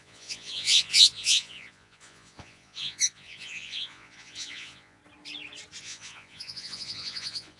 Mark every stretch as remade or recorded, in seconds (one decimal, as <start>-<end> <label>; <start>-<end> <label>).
0.0-5.0 remade; 5.0-5.8 recorded; 5.8-7.6 remade